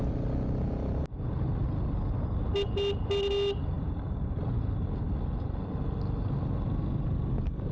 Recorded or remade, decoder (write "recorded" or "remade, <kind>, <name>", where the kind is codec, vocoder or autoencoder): recorded